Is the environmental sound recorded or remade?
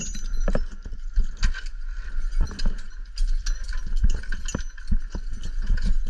recorded